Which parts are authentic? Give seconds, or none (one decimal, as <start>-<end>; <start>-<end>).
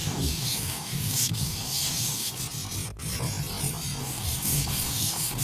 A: 2.4-4.0